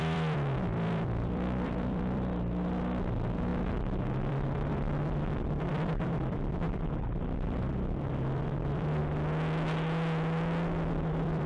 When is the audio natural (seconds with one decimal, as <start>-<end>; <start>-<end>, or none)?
9.0-10.9